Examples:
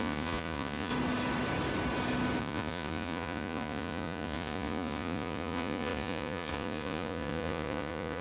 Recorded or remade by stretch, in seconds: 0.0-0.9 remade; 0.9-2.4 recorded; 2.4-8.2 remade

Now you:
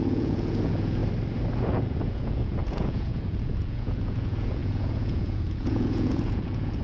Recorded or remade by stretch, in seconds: 0.0-1.0 remade; 1.0-1.6 recorded; 1.6-6.8 remade

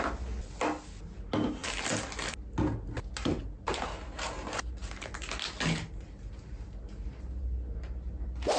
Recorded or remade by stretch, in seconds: 0.0-8.6 recorded

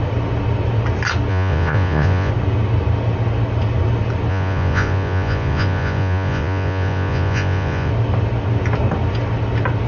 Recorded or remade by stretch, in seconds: 0.0-1.3 recorded; 1.3-2.3 remade; 2.3-4.3 recorded; 4.3-7.9 remade; 7.9-9.9 recorded

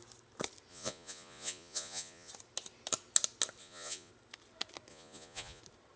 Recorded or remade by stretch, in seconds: 0.0-0.7 recorded; 0.7-2.3 remade; 2.3-3.6 recorded; 3.6-4.1 remade; 4.1-4.9 recorded; 4.9-5.6 remade; 5.6-6.0 recorded

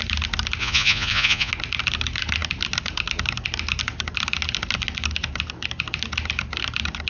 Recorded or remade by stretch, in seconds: 0.0-0.6 recorded; 0.6-1.5 remade; 1.5-7.1 recorded